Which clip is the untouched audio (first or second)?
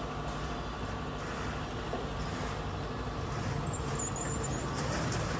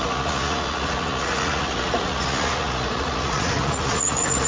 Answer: first